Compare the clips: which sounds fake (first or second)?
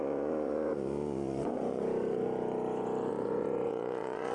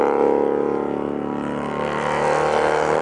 first